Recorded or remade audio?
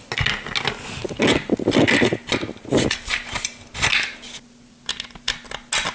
recorded